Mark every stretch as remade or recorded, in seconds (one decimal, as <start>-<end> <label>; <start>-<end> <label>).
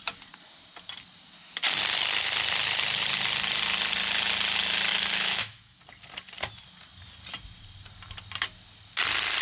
0.0-4.9 recorded; 4.9-5.8 remade; 5.8-9.4 recorded